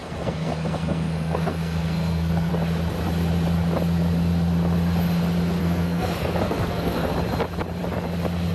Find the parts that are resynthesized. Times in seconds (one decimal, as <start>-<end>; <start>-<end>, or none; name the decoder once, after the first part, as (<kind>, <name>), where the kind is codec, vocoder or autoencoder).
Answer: 0.0-2.5 (codec, SNAC); 5.6-7.1